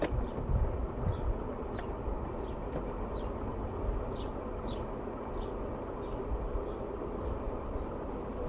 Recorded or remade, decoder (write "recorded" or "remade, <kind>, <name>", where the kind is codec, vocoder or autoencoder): recorded